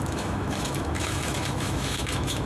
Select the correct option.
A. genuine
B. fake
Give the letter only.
B